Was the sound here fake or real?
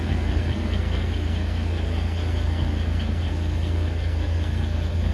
fake